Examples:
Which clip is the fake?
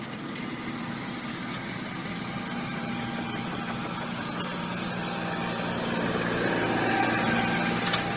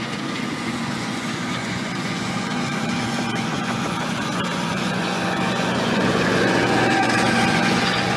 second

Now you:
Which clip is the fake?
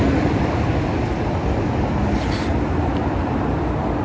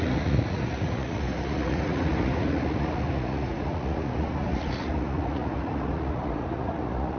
second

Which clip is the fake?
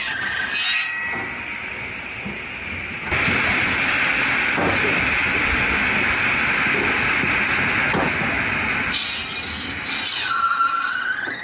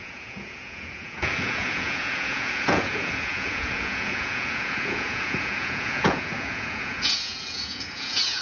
second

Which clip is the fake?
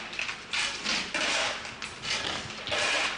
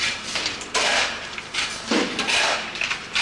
second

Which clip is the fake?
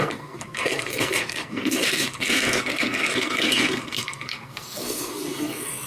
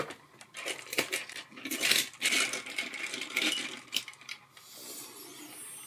first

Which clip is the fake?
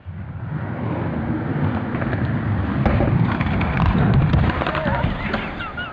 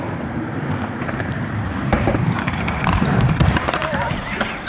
second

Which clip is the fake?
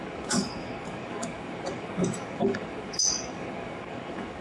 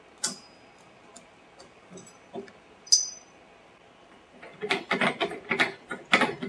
first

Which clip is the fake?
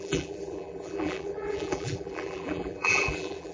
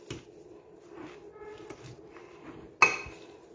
first